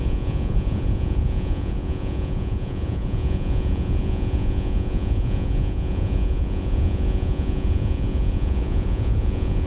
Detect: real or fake fake